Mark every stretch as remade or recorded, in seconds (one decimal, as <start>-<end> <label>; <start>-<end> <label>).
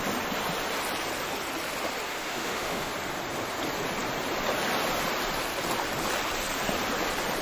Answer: 0.0-2.1 recorded; 2.1-2.9 remade; 2.9-7.4 recorded